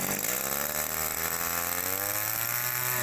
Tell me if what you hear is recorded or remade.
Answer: recorded